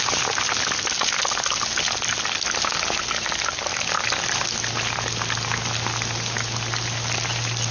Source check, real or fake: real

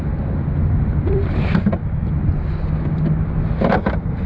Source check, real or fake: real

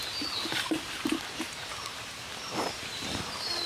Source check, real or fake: real